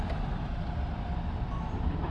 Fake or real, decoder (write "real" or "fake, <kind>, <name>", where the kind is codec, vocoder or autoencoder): fake, vocoder, BigVGAN v2